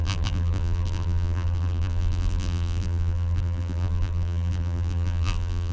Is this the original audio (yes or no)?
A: no